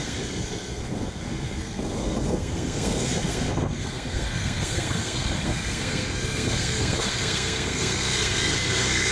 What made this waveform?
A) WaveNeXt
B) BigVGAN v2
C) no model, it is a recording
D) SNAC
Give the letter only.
D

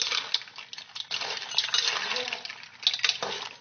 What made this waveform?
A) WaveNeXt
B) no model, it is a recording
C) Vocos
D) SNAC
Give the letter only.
B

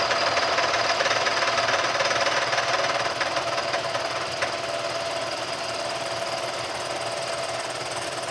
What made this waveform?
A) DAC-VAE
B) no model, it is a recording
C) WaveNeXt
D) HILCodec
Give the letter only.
B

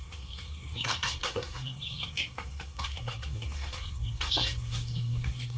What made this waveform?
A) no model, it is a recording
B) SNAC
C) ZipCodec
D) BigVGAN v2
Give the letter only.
B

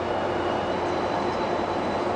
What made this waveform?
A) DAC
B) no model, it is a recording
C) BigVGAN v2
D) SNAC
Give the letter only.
B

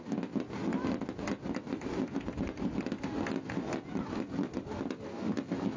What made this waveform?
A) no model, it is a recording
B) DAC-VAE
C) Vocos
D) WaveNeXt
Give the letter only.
A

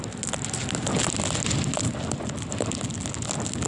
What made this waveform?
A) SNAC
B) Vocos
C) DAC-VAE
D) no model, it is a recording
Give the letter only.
D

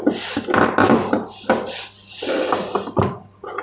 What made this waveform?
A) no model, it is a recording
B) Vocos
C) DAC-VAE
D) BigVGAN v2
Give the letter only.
A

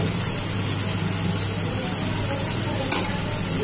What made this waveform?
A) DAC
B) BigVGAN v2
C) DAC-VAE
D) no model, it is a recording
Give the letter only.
D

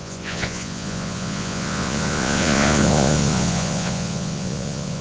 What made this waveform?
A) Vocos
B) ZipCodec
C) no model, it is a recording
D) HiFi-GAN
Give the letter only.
A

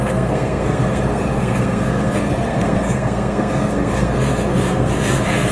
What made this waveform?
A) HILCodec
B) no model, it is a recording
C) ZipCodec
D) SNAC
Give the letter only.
D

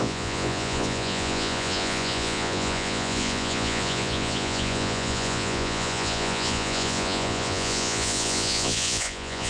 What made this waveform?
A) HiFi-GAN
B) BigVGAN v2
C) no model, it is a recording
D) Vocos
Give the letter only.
D